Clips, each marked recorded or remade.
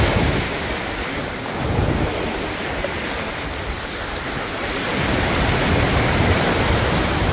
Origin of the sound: recorded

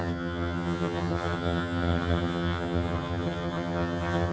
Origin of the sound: remade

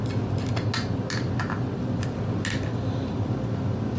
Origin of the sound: recorded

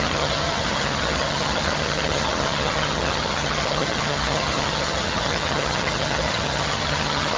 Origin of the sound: remade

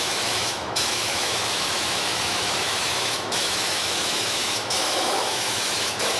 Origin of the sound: remade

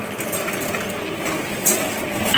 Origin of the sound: recorded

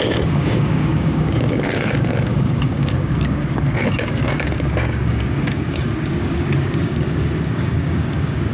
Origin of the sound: remade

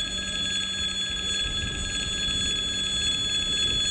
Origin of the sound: recorded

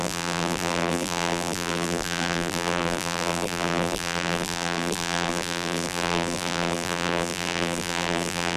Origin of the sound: remade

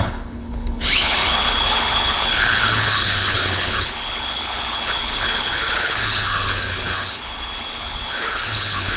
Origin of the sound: remade